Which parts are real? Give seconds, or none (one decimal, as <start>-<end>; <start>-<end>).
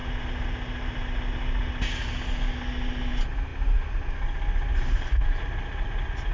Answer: 0.0-6.3